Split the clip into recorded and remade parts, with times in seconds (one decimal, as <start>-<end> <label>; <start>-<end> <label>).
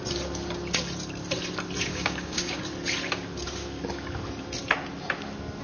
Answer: 0.0-1.9 recorded; 1.9-2.6 remade; 2.6-5.6 recorded